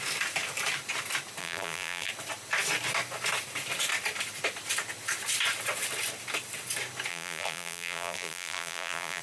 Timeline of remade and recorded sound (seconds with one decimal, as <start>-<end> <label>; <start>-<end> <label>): 0.0-1.4 recorded; 1.4-2.1 remade; 2.1-7.1 recorded; 7.1-9.2 remade